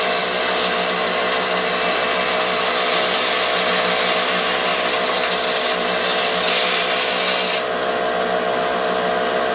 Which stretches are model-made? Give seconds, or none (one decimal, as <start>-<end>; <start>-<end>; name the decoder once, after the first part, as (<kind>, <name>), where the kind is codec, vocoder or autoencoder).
none